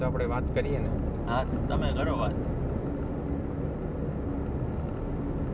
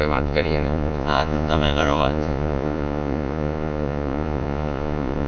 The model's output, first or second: second